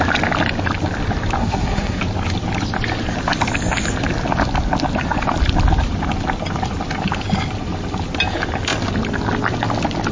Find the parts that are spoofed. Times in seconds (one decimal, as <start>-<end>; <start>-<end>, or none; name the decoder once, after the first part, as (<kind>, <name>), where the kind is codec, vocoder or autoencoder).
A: 1.4-2.0 (codec, SNAC)